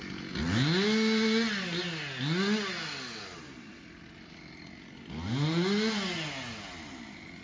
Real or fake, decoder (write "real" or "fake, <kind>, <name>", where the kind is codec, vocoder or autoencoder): real